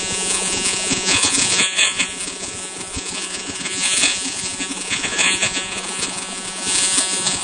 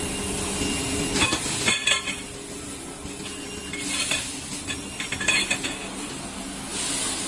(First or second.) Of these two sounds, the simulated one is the first